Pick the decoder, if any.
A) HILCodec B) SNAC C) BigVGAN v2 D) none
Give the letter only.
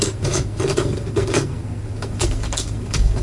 B